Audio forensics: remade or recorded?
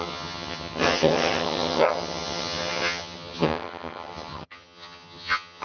remade